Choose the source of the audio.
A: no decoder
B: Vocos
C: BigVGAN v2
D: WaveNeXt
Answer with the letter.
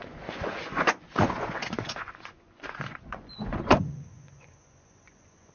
B